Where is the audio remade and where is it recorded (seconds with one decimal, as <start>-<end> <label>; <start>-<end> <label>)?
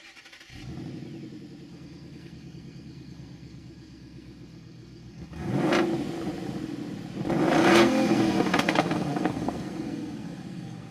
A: 0.0-1.7 recorded; 1.7-5.5 remade; 5.5-7.6 recorded; 7.6-10.9 remade